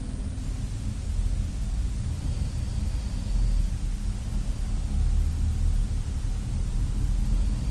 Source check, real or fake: real